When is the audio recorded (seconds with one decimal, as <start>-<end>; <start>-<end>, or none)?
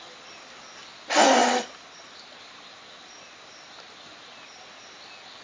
0.0-5.4